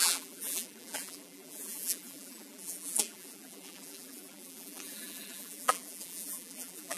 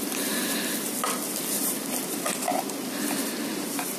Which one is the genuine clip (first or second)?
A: second